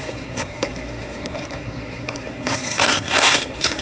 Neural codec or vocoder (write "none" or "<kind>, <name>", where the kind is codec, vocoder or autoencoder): codec, SNAC